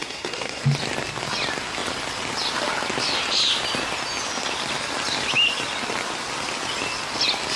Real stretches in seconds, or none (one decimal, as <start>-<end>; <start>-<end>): 0.6-7.6